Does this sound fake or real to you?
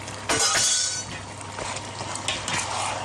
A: real